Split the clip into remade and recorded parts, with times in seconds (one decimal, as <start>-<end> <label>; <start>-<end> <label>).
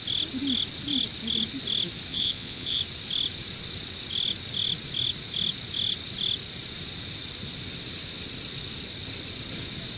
0.0-2.1 recorded; 2.1-2.8 remade; 2.8-10.0 recorded